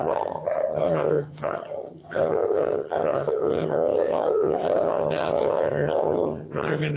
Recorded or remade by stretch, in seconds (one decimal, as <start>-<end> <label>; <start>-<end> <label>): 0.0-7.0 remade